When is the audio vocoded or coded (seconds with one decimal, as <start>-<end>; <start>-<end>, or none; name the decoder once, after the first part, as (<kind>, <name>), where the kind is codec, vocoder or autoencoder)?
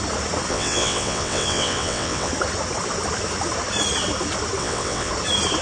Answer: 0.5-2.3 (vocoder, WaveNeXt); 4.6-5.1